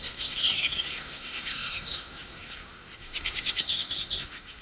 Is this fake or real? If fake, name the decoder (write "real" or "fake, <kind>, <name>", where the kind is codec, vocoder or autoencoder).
fake, codec, SNAC